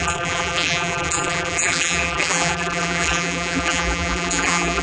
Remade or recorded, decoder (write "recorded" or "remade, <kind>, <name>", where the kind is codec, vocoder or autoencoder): remade, vocoder, BigVGAN v2